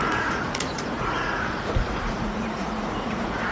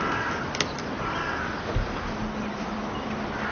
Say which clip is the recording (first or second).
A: second